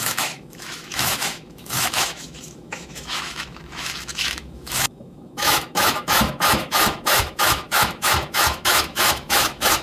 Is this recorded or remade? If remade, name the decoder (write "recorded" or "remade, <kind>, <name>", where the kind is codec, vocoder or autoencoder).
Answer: remade, autoencoder, DAC-VAE